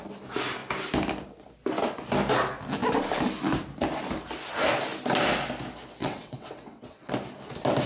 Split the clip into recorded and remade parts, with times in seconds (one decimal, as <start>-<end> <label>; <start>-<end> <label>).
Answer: 0.0-6.0 recorded; 6.0-7.1 remade; 7.1-7.9 recorded